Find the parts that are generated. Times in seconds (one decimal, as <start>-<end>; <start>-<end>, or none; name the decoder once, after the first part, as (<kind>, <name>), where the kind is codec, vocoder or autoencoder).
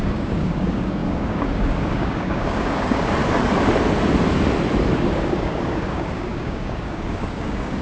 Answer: 0.0-3.2 (codec, DAC); 4.9-7.8